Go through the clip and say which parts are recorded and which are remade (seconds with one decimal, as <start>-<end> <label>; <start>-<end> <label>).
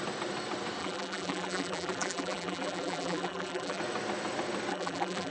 0.0-0.8 recorded; 0.8-3.8 remade; 3.8-4.7 recorded; 4.7-5.3 remade